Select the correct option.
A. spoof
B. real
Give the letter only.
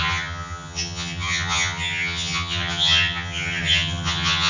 A